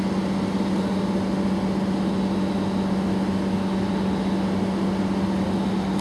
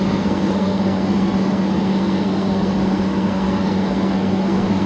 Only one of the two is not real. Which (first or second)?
second